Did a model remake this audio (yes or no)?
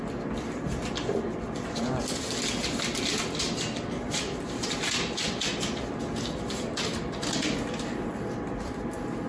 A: no